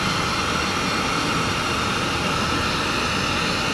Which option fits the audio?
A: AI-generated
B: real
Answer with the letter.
B